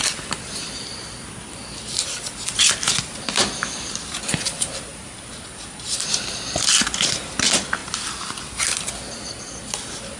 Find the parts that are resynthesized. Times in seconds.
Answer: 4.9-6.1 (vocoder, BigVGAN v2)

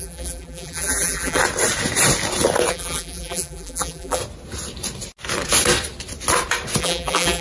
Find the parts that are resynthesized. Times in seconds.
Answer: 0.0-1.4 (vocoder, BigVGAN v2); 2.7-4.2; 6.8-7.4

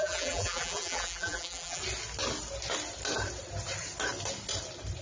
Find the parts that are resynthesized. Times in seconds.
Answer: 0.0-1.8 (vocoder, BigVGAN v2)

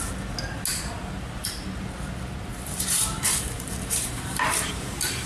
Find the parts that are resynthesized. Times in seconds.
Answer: 0.7-1.5 (vocoder, BigVGAN v2); 2.5-5.3